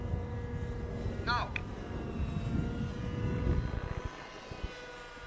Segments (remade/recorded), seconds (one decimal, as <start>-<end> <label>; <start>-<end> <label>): 0.0-5.3 recorded